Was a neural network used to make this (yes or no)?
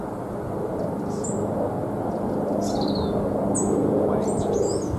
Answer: no